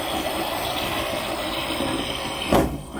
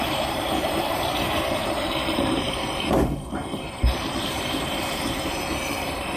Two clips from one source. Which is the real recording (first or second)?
first